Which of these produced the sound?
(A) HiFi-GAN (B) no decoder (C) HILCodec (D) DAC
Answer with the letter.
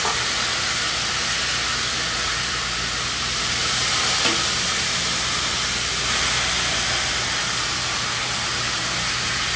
B